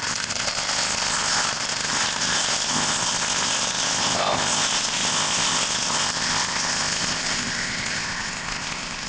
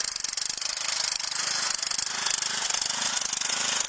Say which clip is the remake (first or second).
first